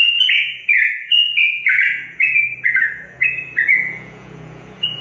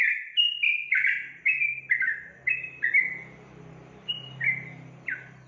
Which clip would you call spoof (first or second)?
first